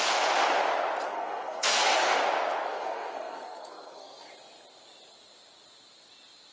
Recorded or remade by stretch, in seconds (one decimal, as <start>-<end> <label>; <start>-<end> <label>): 0.0-1.1 recorded; 1.1-2.2 remade; 2.2-2.7 recorded; 2.7-4.3 remade; 4.3-6.5 recorded